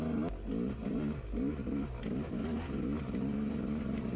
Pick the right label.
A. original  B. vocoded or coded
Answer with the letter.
A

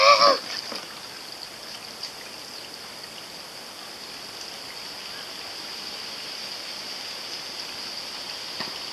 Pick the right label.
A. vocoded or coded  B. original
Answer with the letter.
B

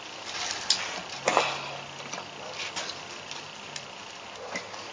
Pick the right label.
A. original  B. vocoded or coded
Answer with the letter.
A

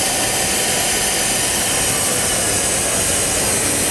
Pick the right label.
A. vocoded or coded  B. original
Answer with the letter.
B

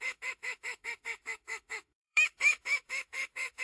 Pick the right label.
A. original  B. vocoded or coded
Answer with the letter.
B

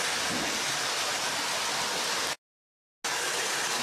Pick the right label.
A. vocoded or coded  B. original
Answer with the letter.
B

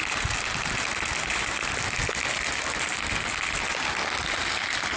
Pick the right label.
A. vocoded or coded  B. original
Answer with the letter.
B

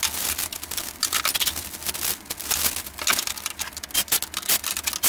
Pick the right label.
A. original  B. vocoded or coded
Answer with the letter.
A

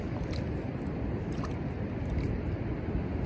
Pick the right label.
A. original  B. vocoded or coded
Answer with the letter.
A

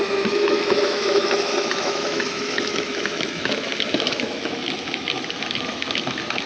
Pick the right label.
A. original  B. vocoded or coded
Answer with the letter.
B